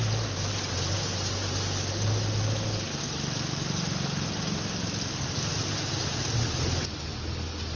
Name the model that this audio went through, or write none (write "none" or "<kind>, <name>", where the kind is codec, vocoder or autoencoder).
none